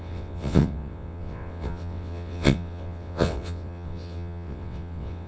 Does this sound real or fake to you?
fake